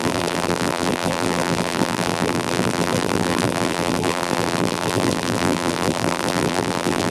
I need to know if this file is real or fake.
fake